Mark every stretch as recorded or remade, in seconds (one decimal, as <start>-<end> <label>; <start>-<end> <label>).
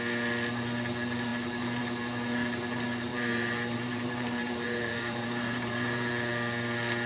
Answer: 0.0-3.1 recorded; 3.1-6.1 remade; 6.1-7.1 recorded